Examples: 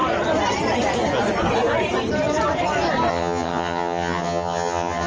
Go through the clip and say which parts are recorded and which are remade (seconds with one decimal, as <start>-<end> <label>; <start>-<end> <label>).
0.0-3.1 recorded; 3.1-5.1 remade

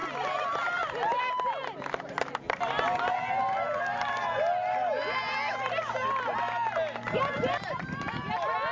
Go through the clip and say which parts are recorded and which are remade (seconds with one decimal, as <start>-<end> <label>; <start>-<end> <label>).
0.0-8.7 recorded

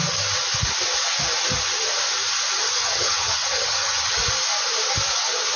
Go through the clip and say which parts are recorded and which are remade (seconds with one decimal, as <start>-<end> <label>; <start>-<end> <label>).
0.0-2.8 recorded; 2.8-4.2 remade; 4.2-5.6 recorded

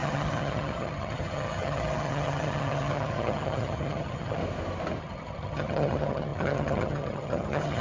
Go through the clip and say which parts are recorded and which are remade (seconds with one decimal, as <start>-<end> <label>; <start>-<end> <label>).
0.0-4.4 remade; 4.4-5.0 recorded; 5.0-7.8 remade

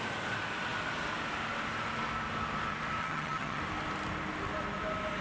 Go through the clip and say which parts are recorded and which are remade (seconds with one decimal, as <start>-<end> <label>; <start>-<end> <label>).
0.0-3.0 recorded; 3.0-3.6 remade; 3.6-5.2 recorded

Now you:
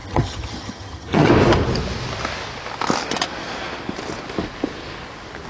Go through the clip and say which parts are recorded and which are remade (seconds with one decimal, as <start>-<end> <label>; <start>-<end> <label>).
0.0-1.3 remade; 1.3-5.5 recorded

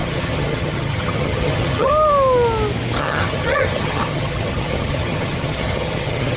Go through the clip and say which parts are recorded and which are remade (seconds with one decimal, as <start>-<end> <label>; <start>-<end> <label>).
0.0-1.9 remade; 1.9-3.0 recorded; 3.0-6.4 remade